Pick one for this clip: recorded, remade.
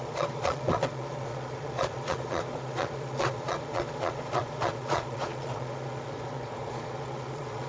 remade